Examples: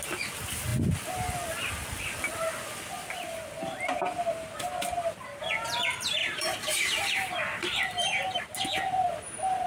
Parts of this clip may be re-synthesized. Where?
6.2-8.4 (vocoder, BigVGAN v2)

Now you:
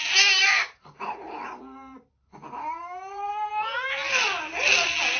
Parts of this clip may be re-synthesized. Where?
0.4-3.5 (vocoder, BigVGAN v2)

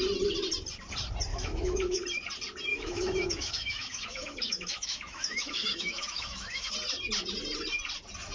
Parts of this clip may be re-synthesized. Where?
1.3-2.0 (autoencoder, DAC-VAE); 2.7-6.7

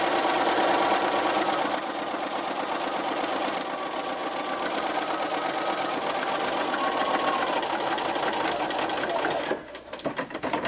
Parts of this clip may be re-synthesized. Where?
none

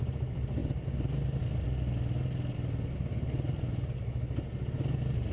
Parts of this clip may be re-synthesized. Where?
none

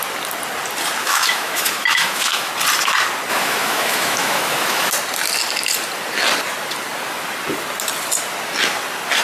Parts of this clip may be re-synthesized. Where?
1.0-2.5 (autoencoder, DAC-VAE); 3.3-4.9